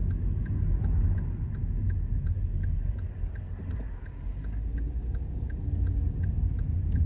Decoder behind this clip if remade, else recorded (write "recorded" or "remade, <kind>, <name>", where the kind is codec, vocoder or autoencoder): recorded